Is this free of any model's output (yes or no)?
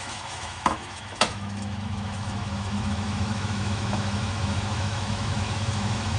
no